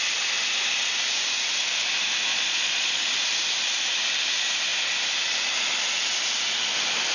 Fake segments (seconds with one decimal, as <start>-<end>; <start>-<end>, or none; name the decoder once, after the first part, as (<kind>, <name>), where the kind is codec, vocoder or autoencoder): 2.3-3.0 (vocoder, Vocos)